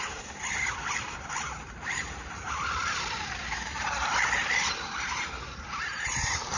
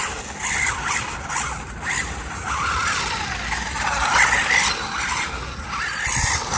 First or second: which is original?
second